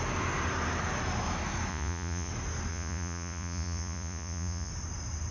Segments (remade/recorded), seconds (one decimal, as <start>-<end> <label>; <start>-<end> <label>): 0.0-1.7 recorded; 1.7-2.3 remade; 2.3-2.7 recorded; 2.7-4.7 remade; 4.7-5.3 recorded